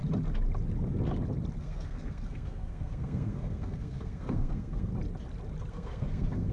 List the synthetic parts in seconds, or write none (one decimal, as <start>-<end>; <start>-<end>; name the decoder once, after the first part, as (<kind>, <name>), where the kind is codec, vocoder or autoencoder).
1.6-4.9 (codec, SNAC); 5.7-6.5